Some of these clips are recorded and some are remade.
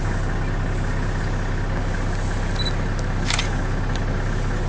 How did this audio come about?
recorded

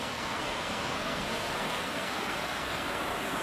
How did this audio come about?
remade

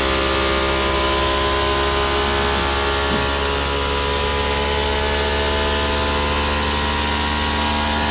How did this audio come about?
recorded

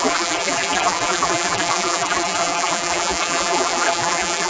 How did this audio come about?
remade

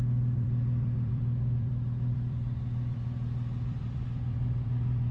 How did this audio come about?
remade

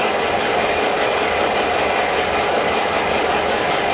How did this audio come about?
remade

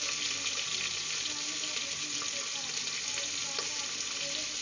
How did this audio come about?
recorded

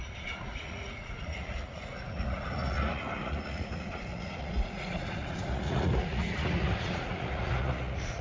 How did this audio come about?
remade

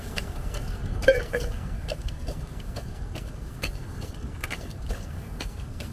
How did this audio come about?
remade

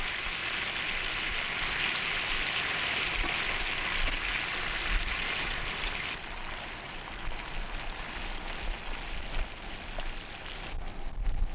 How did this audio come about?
recorded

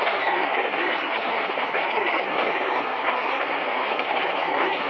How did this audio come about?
remade